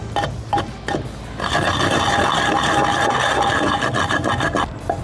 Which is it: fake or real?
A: real